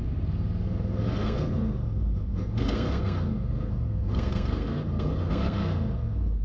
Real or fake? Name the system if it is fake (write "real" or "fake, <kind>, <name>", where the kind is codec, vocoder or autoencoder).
fake, codec, SNAC